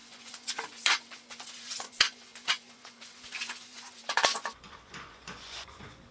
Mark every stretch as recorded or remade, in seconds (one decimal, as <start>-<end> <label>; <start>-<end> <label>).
0.0-6.1 remade